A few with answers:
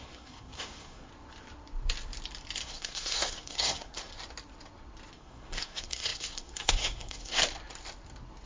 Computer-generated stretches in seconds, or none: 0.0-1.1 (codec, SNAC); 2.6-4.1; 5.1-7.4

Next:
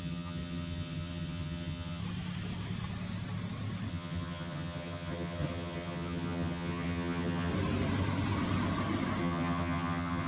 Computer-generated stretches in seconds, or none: 0.0-2.0 (vocoder, HiFi-GAN); 3.9-7.5; 9.2-10.3

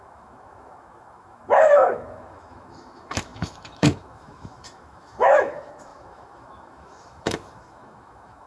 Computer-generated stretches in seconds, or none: 0.0-8.5 (autoencoder, DAC-VAE)